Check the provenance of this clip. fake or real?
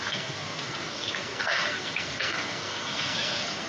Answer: fake